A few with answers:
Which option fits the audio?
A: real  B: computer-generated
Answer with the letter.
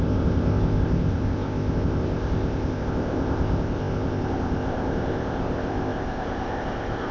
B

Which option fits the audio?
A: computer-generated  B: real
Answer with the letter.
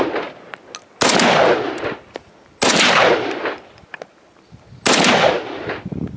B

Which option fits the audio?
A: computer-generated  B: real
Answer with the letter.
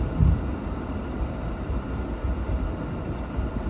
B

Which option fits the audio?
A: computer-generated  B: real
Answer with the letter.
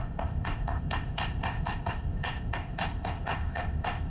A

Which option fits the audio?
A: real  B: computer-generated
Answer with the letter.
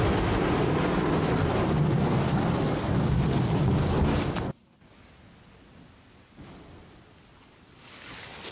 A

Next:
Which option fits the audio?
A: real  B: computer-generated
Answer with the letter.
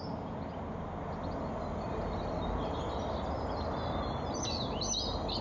A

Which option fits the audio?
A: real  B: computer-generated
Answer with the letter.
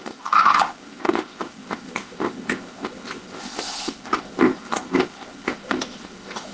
B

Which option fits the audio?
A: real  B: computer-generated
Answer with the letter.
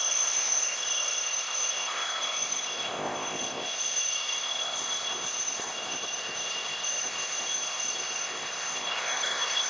B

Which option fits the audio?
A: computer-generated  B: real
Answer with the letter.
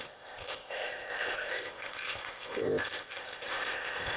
A